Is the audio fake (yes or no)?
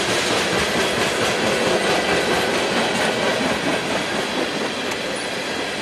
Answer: no